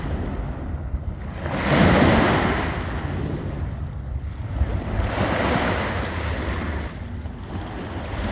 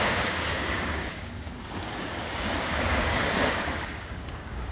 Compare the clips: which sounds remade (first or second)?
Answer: second